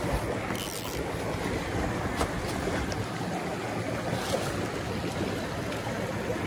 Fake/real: real